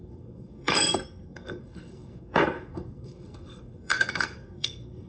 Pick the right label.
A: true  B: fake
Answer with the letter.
B